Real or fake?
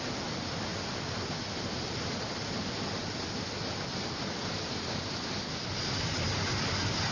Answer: real